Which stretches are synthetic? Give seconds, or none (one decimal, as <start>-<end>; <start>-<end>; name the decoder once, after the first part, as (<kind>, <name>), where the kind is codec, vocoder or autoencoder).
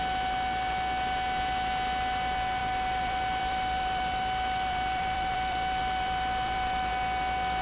2.6-6.9 (vocoder, BigVGAN v2)